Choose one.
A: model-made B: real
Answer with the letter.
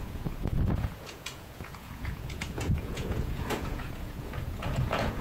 A